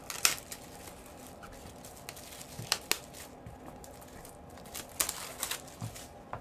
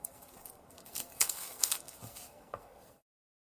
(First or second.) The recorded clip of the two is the first